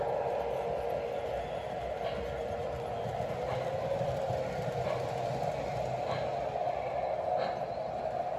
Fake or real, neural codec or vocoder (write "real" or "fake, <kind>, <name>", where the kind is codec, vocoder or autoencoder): real